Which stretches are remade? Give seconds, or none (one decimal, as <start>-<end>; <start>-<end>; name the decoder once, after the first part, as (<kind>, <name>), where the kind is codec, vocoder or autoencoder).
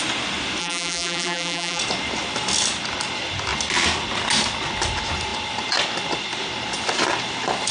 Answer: 0.6-1.8 (vocoder, BigVGAN v2)